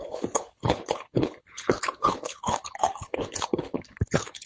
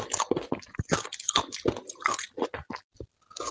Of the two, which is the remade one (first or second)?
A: first